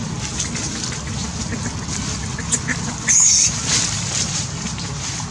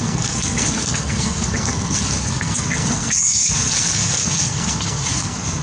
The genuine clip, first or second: first